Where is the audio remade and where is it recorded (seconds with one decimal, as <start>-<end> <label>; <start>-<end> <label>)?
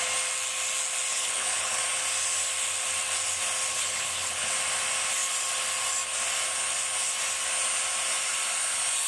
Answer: 0.0-1.1 recorded; 1.1-1.8 remade; 1.8-3.7 recorded; 3.7-4.5 remade; 4.5-9.1 recorded